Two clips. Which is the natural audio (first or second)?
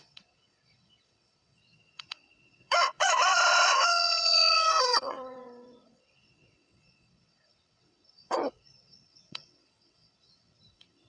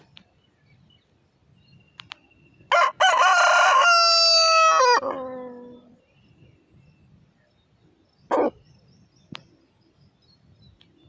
second